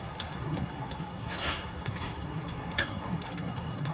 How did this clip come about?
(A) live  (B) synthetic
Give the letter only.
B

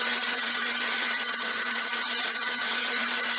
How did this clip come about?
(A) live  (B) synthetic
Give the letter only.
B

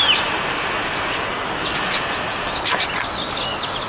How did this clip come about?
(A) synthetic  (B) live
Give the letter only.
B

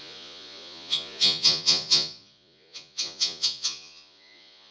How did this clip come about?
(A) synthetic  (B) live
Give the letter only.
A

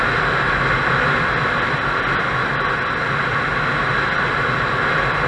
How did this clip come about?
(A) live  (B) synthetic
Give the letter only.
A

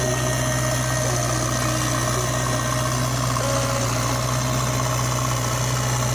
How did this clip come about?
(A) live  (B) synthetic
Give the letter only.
A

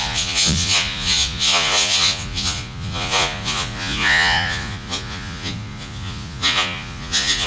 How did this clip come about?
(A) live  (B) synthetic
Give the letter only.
B